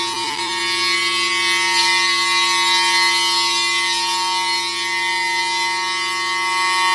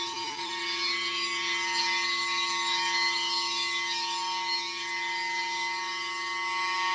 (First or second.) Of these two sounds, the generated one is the second